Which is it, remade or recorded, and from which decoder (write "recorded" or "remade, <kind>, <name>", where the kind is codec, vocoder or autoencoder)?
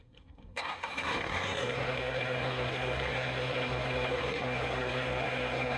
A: remade, codec, SNAC